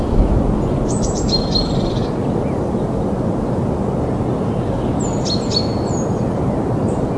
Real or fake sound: real